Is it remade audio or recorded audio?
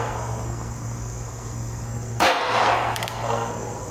remade